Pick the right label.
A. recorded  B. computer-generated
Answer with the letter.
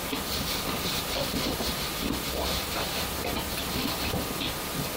A